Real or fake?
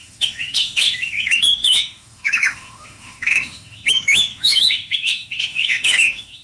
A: fake